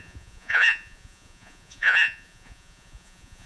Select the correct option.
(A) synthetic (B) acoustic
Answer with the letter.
A